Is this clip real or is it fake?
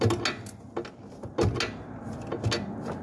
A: real